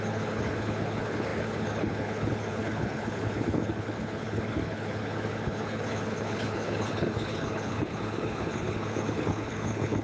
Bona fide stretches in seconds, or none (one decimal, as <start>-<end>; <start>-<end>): none